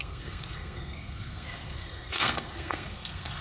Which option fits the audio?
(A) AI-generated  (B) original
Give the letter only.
A